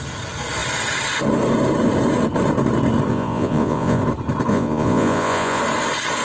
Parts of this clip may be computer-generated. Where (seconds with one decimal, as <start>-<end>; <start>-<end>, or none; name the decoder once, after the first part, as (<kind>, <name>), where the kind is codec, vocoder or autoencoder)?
3.1-4.0 (vocoder, Vocos); 4.5-5.6